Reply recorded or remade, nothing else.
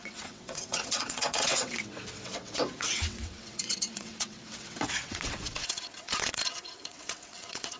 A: remade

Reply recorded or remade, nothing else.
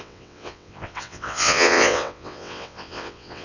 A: remade